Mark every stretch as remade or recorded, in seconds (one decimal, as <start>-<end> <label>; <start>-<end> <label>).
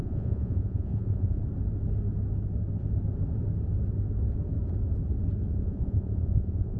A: 0.0-1.4 remade; 1.4-5.5 recorded; 5.5-6.8 remade